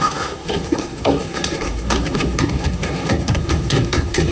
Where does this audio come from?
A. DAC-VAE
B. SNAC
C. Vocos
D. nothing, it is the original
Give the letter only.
B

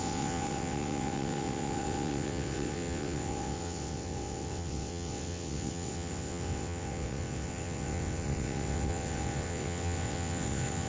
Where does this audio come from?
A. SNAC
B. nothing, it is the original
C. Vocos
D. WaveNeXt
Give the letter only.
D